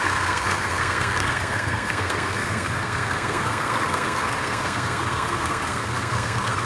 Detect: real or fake fake